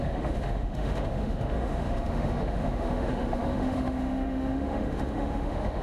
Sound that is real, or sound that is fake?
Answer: fake